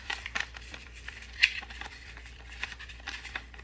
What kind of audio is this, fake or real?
fake